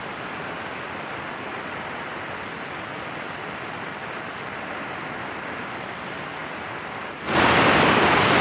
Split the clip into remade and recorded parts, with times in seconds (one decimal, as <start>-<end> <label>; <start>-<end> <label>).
0.0-8.4 recorded